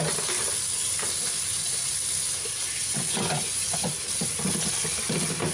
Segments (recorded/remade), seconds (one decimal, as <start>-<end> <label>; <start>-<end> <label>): 0.0-2.8 recorded; 2.8-3.9 remade; 3.9-5.5 recorded